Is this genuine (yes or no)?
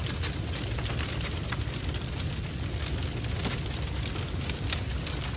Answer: yes